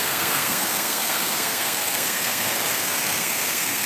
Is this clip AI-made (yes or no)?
yes